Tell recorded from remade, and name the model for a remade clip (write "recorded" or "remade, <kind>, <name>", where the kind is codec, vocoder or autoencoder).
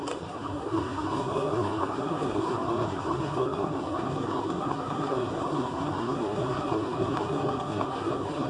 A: remade, codec, SNAC